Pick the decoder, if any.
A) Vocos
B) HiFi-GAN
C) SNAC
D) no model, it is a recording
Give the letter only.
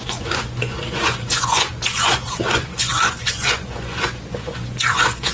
A